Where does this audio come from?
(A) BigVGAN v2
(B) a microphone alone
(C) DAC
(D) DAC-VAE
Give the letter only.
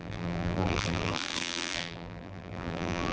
A